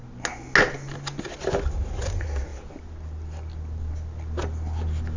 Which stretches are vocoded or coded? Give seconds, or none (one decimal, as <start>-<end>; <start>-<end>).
none